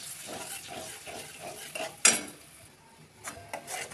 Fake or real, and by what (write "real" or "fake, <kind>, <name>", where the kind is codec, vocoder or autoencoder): real